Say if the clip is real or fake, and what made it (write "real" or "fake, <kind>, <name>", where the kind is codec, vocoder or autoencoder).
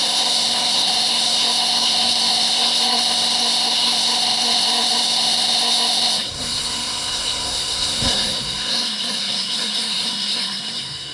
fake, codec, SNAC